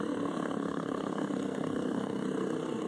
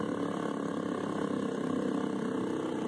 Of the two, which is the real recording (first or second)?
second